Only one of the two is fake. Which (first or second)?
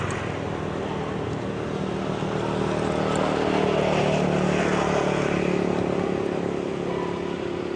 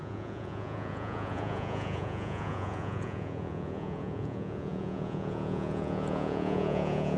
second